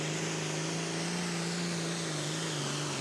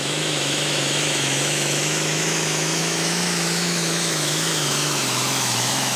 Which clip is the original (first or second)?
first